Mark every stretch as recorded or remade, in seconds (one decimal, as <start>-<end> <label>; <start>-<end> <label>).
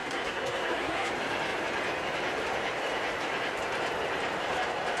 0.0-1.1 remade; 1.1-5.0 recorded